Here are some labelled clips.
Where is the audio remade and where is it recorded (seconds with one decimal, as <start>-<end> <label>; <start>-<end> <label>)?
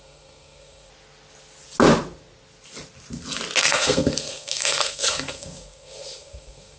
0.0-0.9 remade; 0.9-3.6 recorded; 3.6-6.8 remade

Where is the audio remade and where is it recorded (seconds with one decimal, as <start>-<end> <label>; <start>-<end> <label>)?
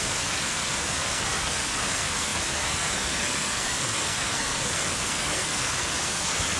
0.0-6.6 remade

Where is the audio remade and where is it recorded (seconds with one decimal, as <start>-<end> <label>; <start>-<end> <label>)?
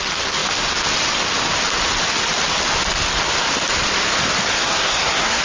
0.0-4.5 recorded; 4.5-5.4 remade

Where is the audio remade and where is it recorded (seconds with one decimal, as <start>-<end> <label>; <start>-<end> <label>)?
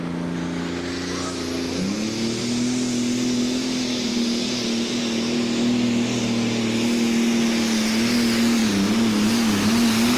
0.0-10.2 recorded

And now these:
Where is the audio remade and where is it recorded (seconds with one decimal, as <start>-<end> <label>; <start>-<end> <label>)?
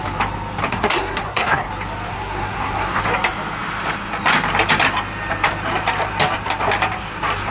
0.0-0.7 recorded; 0.7-1.7 remade; 1.7-2.1 recorded; 2.1-3.0 remade; 3.0-7.5 recorded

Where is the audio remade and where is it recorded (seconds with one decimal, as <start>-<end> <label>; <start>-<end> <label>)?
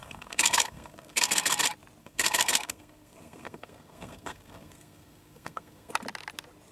0.0-1.6 remade; 1.6-2.0 recorded; 2.0-5.9 remade; 5.9-6.7 recorded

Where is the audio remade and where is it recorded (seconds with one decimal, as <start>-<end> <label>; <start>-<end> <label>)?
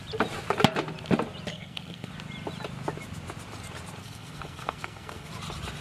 0.0-1.5 recorded; 1.5-2.1 remade; 2.1-4.0 recorded; 4.0-5.3 remade; 5.3-5.8 recorded